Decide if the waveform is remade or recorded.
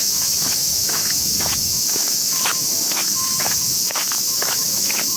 remade